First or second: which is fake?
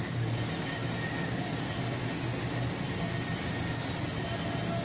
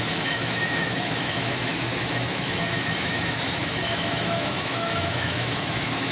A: second